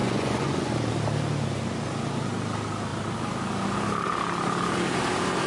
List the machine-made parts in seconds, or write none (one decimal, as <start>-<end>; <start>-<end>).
0.0-0.7